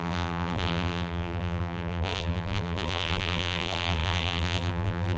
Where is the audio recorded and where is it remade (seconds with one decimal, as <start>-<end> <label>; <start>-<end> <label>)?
0.0-5.2 remade